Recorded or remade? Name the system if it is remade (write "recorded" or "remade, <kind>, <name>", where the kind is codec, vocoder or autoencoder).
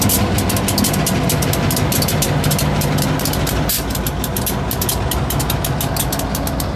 recorded